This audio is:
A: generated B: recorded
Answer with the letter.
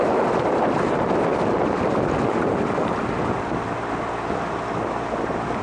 B